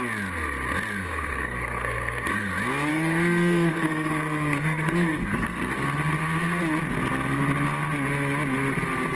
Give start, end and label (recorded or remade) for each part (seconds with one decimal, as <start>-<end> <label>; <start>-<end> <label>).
0.0-1.0 recorded; 1.0-2.5 remade; 2.5-2.9 recorded; 2.9-5.7 remade; 5.7-9.2 recorded